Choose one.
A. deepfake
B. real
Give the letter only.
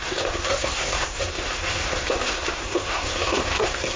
A